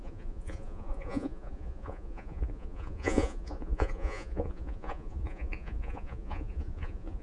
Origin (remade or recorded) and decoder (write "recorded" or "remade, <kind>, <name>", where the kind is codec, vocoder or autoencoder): remade, vocoder, Vocos